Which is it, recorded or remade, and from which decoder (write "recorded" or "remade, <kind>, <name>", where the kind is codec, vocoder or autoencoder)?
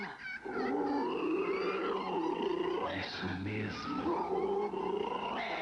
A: recorded